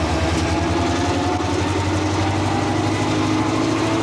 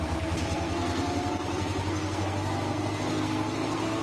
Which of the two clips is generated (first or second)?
second